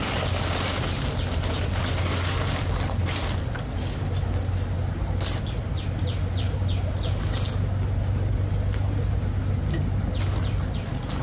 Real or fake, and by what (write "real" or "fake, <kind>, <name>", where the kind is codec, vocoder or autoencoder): real